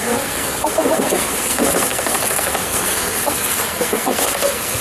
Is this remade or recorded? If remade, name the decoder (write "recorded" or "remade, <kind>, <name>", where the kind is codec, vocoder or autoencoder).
remade, codec, SNAC